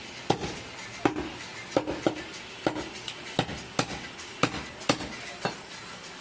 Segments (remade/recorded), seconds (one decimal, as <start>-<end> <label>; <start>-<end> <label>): 0.0-6.2 recorded